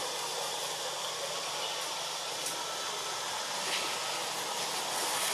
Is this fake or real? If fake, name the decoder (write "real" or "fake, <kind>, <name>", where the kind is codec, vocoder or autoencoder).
real